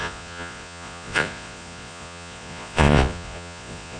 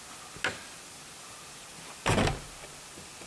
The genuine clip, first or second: second